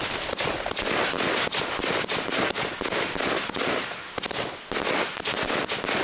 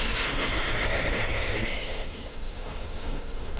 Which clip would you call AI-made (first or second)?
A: second